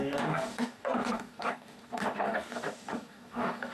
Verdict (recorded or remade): remade